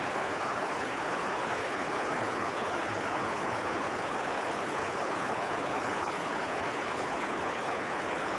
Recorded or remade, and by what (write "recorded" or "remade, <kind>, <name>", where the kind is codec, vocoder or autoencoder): remade, codec, HILCodec